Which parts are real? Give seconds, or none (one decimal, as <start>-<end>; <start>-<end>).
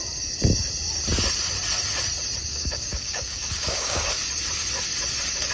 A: 0.0-2.5; 4.1-5.5